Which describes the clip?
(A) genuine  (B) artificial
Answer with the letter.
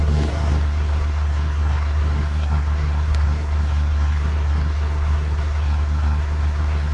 B